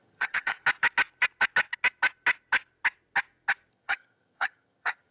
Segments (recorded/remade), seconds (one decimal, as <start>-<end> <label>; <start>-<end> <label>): 0.0-0.6 remade; 0.6-3.7 recorded; 3.7-5.1 remade